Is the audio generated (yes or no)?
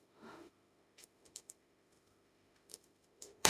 yes